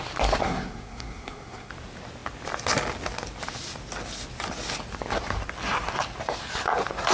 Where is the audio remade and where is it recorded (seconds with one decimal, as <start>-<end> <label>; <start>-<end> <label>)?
0.0-0.4 recorded; 0.4-1.7 remade; 1.7-7.1 recorded